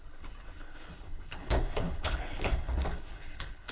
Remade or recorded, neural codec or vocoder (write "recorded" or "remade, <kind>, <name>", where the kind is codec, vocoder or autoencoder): remade, codec, HILCodec